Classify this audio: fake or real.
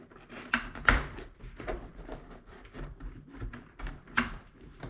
real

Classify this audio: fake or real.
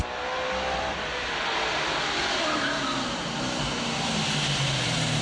real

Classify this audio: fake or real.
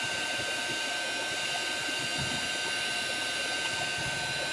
real